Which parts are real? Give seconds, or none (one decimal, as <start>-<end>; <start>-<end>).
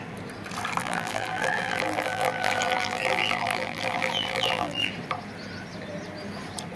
0.0-0.8; 4.9-6.8